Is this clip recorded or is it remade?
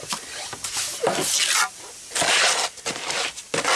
recorded